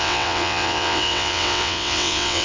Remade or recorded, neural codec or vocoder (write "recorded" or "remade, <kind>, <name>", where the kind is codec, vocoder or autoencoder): remade, vocoder, WaveNeXt